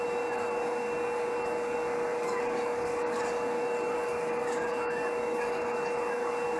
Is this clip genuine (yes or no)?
no